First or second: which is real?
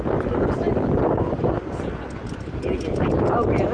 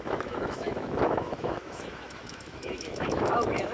first